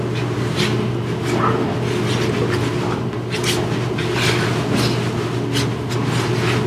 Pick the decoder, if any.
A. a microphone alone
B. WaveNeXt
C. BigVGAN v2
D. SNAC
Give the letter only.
A